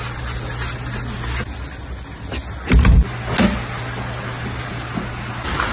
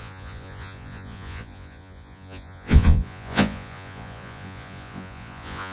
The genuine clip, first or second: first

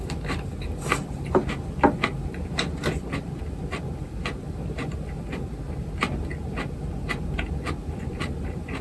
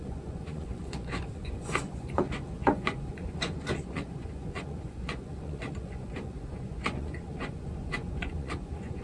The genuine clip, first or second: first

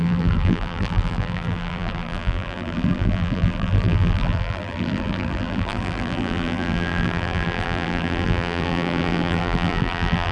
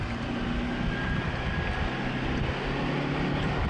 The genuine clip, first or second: second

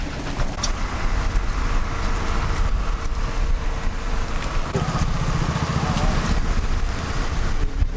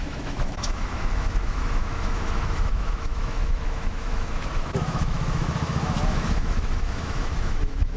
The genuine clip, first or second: first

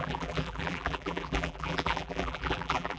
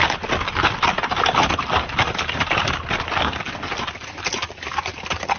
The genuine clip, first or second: second